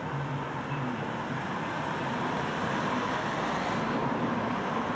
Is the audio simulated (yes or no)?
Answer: no